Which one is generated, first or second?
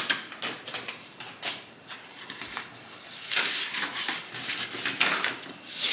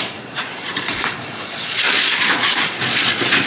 second